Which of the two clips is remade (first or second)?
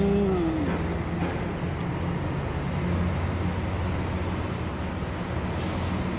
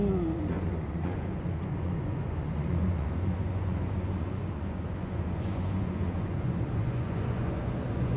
second